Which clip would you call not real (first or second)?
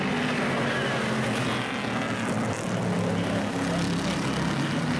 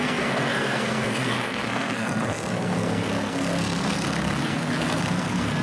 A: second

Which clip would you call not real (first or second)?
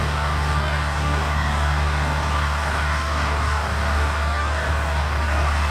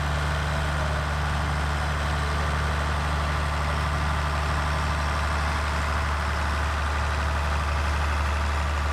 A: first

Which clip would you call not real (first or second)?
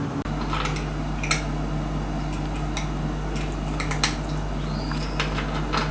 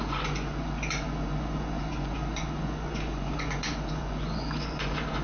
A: second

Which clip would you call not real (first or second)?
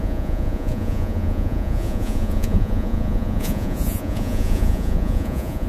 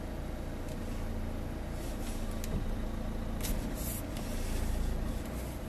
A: first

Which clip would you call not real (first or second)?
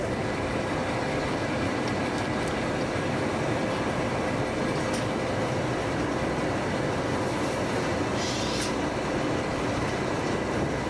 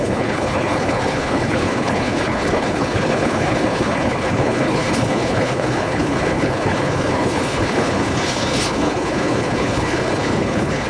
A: second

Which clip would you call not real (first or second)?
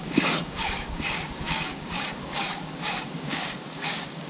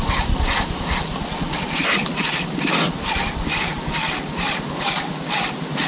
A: first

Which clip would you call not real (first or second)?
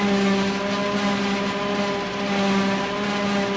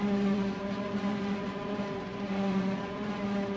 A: second